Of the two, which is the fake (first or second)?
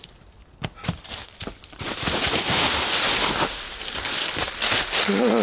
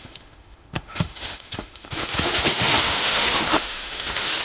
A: second